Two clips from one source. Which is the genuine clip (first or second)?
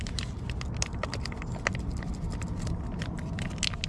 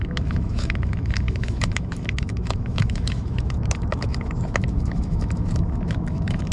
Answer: first